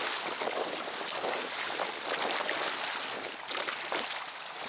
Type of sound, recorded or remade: recorded